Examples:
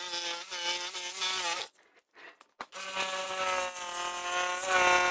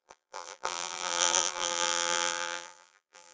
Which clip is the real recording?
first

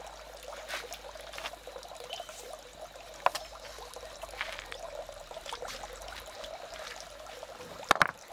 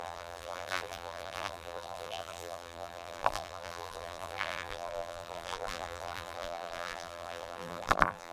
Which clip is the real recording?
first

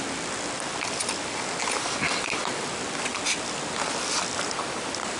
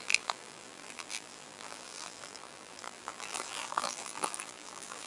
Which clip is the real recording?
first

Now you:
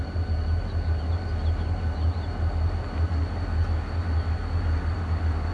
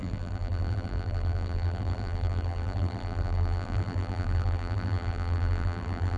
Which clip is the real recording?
first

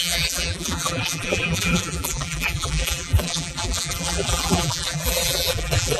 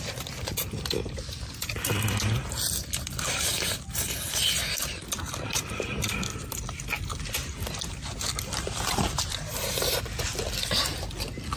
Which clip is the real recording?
second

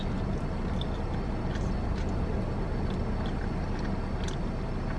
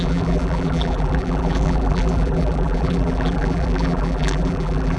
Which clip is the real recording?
first